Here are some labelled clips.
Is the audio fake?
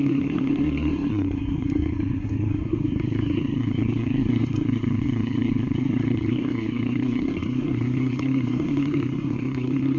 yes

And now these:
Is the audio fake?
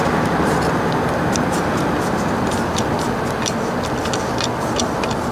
no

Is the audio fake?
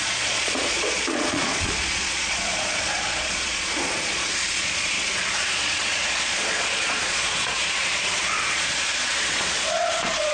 yes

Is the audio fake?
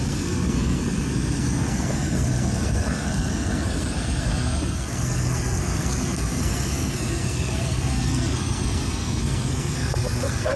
yes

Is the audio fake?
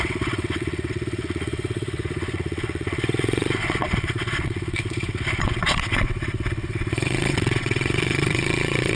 yes